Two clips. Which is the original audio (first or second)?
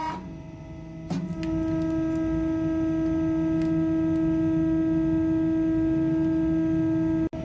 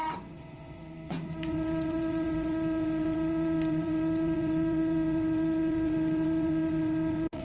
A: first